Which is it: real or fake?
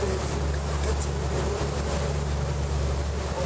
real